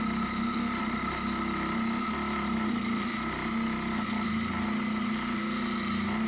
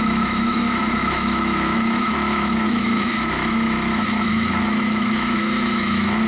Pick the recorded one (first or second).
first